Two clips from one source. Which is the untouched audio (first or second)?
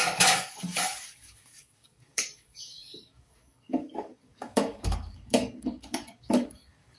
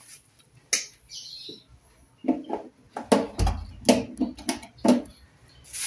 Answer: second